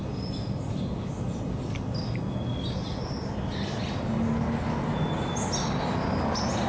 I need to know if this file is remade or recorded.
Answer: recorded